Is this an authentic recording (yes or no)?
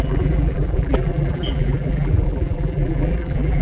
no